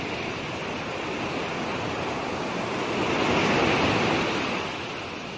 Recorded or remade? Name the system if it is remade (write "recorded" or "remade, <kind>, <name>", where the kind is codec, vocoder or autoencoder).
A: recorded